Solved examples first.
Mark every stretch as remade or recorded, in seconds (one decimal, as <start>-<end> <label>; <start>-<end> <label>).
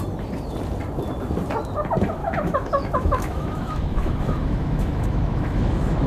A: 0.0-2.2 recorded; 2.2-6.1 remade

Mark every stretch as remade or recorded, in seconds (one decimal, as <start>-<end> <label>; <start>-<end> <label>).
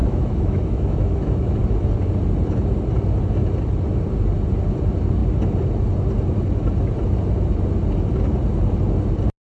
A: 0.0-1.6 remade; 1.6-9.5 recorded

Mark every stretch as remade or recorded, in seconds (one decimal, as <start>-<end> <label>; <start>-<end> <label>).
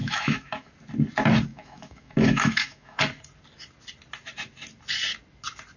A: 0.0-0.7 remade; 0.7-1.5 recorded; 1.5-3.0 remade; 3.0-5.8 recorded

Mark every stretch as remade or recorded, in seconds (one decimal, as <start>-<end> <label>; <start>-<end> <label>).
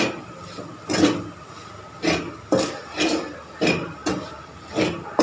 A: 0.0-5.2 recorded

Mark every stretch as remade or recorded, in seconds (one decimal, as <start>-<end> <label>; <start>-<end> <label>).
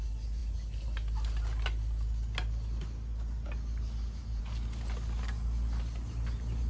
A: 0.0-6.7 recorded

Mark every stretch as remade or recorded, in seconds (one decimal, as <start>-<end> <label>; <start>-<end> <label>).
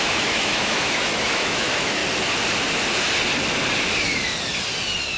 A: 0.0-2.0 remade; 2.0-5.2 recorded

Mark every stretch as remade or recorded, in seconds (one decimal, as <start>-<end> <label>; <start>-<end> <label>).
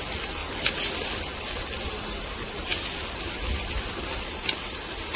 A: 0.0-5.2 recorded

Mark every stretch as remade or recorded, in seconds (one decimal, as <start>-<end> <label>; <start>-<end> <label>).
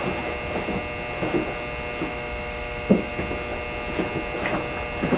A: 0.0-2.1 recorded; 2.1-3.1 remade; 3.1-5.2 recorded